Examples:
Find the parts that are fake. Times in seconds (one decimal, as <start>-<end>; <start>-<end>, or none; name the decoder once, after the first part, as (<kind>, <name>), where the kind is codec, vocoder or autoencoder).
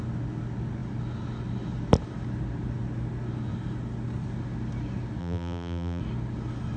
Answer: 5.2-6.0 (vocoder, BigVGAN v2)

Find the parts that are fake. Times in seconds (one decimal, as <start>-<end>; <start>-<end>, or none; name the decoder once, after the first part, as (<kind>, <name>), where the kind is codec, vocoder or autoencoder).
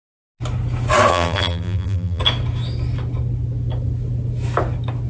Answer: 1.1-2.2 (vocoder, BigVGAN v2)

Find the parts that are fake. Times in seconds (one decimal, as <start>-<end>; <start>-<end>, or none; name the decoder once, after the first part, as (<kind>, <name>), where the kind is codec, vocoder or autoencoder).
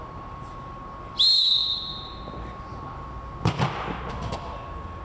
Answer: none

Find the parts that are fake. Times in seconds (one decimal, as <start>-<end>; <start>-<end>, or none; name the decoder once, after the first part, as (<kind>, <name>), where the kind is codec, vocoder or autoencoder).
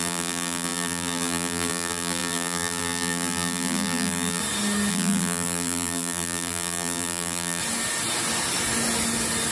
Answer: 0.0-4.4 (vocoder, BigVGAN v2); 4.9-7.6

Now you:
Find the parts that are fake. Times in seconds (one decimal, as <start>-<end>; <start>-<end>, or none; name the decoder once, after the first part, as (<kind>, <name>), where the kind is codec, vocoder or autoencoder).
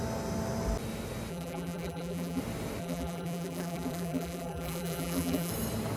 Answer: 1.3-2.4 (vocoder, BigVGAN v2); 2.8-5.5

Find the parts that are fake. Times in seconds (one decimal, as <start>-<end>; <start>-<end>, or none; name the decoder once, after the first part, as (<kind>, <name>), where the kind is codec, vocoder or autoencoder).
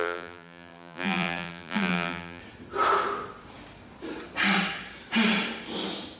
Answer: 0.0-2.4 (vocoder, BigVGAN v2)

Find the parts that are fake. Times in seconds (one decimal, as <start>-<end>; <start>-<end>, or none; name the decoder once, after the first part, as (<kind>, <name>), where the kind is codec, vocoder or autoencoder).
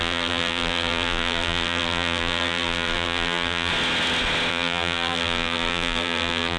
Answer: 0.0-3.7 (vocoder, BigVGAN v2); 4.5-6.6